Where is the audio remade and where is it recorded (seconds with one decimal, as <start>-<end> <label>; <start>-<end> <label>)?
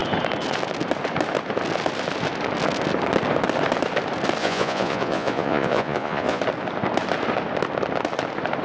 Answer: 0.0-4.4 recorded; 4.4-6.4 remade; 6.4-8.6 recorded